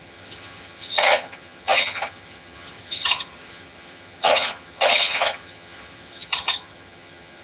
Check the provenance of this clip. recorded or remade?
remade